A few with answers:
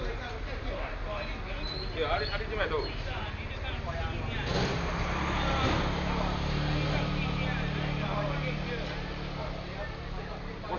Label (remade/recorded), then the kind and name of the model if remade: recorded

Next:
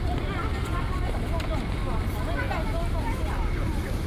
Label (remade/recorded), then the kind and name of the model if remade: recorded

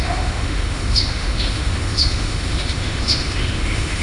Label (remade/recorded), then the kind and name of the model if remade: remade, autoencoder, DAC-VAE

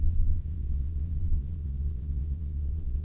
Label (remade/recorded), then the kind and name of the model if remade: remade, vocoder, Vocos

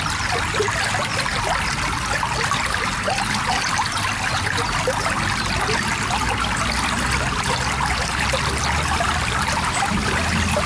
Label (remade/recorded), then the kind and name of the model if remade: recorded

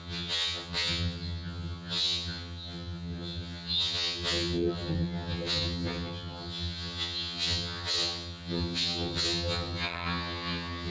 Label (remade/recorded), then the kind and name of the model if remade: remade, vocoder, HiFi-GAN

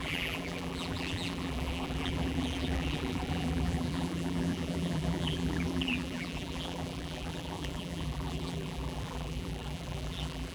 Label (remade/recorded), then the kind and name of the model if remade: remade, vocoder, BigVGAN v2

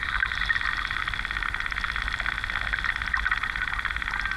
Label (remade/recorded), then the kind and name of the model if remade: recorded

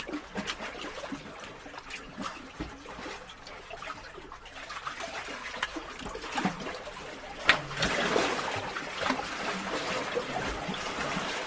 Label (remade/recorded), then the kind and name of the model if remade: recorded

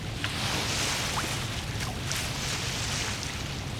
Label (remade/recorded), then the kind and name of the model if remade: recorded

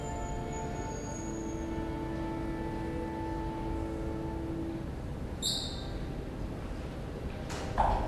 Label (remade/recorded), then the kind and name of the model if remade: recorded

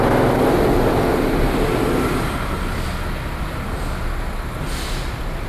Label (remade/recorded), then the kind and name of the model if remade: recorded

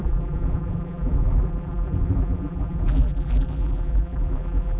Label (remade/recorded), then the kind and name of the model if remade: remade, vocoder, BigVGAN v2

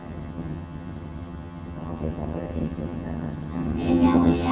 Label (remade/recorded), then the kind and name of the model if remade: remade, vocoder, HiFi-GAN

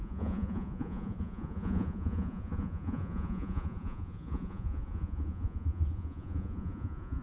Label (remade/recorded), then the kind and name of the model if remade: remade, vocoder, Vocos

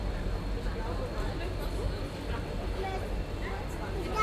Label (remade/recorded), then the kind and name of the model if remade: recorded